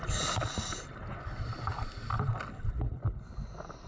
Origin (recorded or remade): recorded